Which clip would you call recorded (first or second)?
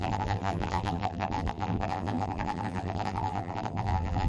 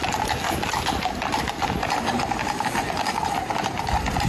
second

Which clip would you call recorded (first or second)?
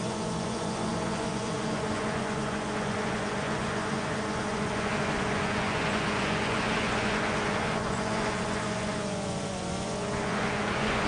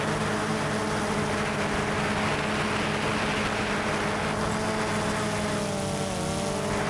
second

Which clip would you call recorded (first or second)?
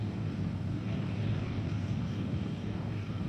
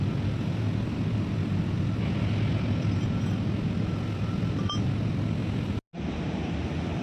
second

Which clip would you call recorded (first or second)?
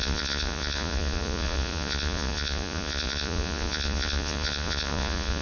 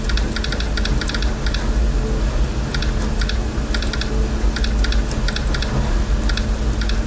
second